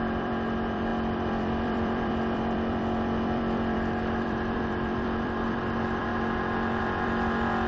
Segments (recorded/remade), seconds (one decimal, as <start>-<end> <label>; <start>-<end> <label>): 0.0-6.1 remade; 6.1-6.8 recorded; 6.8-7.7 remade